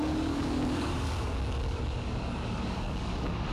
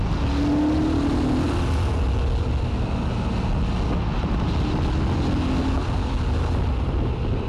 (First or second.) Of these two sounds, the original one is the second